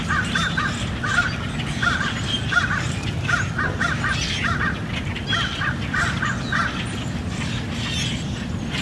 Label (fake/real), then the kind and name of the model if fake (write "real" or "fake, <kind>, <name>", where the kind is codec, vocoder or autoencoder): real